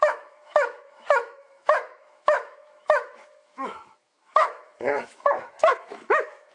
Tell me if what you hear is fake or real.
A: fake